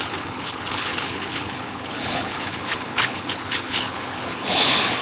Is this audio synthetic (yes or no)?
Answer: yes